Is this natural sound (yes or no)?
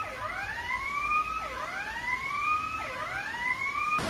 yes